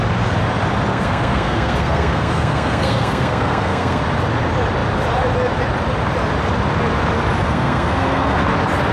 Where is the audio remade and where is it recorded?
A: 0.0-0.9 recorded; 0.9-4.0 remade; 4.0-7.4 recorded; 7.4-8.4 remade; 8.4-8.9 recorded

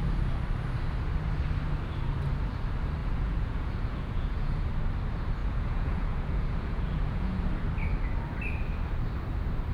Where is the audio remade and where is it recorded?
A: 0.0-3.0 recorded; 3.0-4.7 remade; 4.7-5.4 recorded; 5.4-7.4 remade; 7.4-9.7 recorded

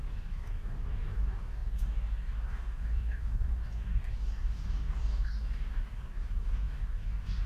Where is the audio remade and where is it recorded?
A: 0.0-7.5 remade

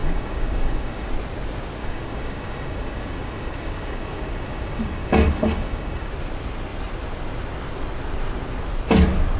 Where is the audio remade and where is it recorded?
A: 0.0-1.1 remade; 1.1-1.8 recorded; 1.8-6.1 remade; 6.1-9.4 recorded